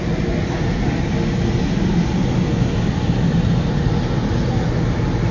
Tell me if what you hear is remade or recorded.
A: recorded